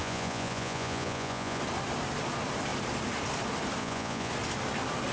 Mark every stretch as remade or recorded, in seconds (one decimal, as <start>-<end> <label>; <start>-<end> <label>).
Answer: 0.0-1.6 remade; 1.6-3.8 recorded; 3.8-4.3 remade; 4.3-5.1 recorded